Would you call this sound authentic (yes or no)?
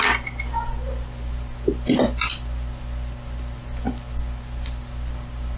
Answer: yes